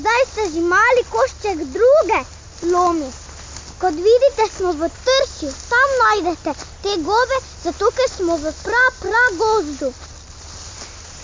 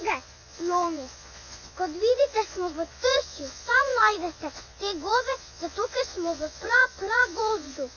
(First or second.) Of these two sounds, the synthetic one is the second